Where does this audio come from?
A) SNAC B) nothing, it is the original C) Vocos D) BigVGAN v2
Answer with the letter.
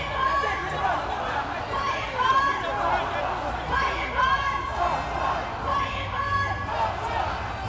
B